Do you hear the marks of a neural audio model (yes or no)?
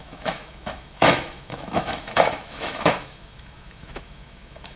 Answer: yes